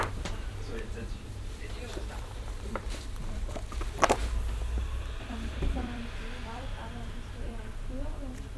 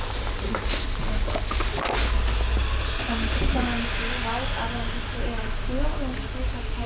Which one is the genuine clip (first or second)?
second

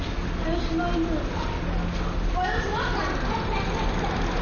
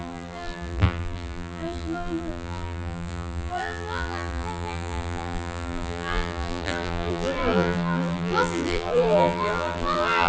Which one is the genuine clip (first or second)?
first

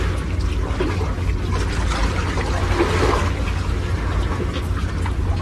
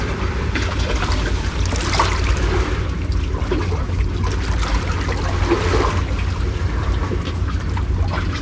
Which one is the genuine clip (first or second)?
first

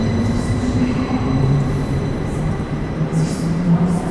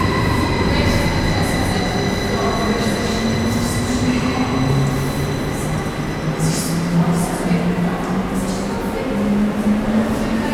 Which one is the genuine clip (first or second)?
second